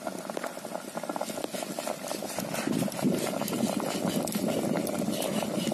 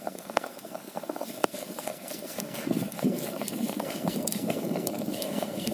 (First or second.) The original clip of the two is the first